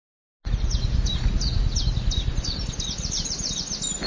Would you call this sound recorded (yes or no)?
yes